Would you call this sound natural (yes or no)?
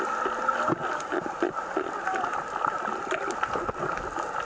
yes